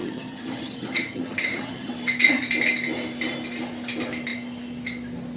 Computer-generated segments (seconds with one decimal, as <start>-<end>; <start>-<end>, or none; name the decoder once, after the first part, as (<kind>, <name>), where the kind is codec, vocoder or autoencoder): 0.0-1.9 (vocoder, HiFi-GAN)